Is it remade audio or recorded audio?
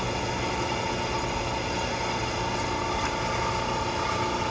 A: recorded